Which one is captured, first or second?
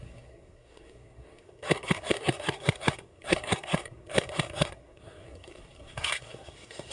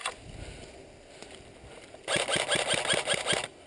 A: second